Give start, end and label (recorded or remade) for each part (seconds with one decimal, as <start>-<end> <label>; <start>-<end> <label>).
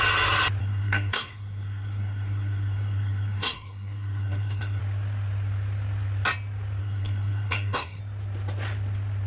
0.0-0.6 recorded; 0.6-4.8 remade; 4.8-6.8 recorded; 6.8-8.0 remade; 8.0-9.3 recorded